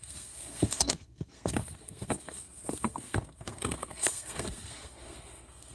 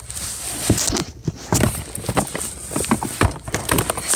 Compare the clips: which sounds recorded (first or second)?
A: second